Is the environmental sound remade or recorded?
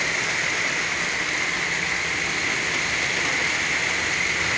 recorded